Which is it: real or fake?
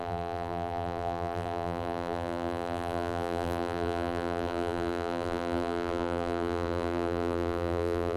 fake